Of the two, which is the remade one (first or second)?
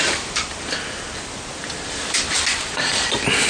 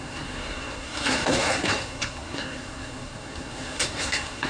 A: second